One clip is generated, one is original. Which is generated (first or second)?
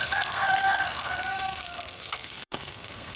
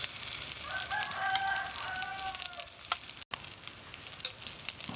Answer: first